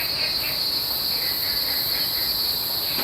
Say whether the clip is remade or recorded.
recorded